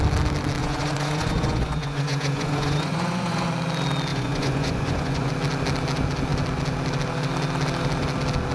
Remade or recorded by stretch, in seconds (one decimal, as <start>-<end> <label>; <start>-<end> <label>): 0.0-0.6 recorded; 0.6-3.5 remade; 3.5-4.1 recorded; 4.1-5.3 remade; 5.3-8.5 recorded